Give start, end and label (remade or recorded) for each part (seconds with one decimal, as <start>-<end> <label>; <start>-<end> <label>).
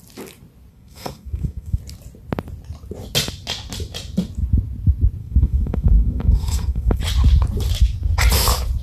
0.0-0.7 recorded; 0.7-1.8 remade; 1.8-5.2 recorded; 5.2-7.0 remade; 7.0-8.8 recorded